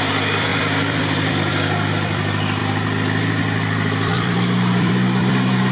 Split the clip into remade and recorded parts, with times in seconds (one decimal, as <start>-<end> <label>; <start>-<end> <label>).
0.0-2.6 remade; 2.6-3.4 recorded; 3.4-5.7 remade